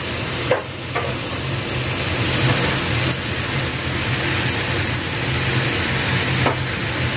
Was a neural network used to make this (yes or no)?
no